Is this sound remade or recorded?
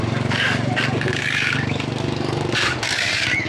remade